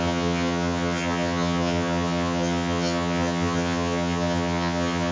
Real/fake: fake